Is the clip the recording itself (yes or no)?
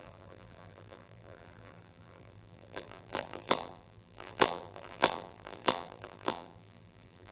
no